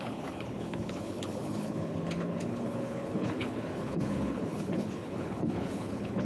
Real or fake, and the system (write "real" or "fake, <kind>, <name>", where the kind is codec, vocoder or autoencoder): fake, codec, HILCodec